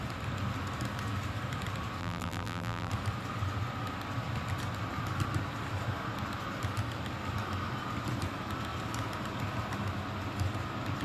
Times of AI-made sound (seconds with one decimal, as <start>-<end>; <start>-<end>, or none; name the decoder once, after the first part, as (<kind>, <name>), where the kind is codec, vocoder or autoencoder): 2.0-2.9 (vocoder, BigVGAN v2)